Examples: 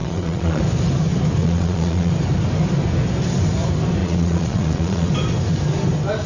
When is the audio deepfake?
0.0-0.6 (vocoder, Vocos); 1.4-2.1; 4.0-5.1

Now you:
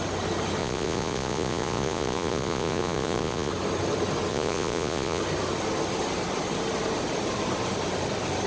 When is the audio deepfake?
0.6-3.5 (vocoder, Vocos); 4.3-5.2

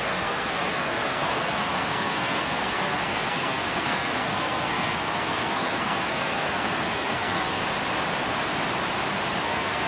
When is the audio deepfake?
0.0-7.6 (codec, SNAC); 9.4-9.9

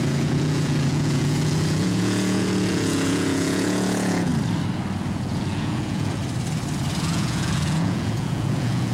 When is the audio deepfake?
0.0-4.3 (vocoder, Vocos); 5.1-6.2; 7.0-8.9

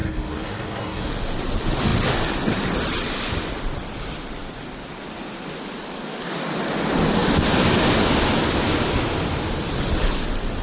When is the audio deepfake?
0.0-1.1 (codec, SNAC)

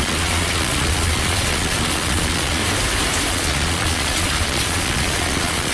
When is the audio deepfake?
0.0-2.6 (vocoder, Vocos); 3.3-5.7

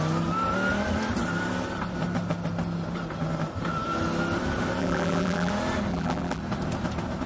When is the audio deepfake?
4.8-5.5 (vocoder, BigVGAN v2); 5.9-6.4